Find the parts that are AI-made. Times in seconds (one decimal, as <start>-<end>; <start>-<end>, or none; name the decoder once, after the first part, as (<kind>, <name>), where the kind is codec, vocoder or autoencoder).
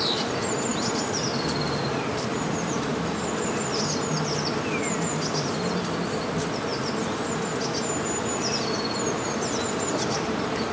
0.7-3.2 (vocoder, BigVGAN v2)